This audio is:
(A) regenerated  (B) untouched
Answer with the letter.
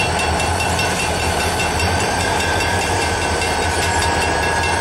A